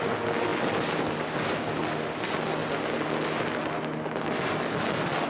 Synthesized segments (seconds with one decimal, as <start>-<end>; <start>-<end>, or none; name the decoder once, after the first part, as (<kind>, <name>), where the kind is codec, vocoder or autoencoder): none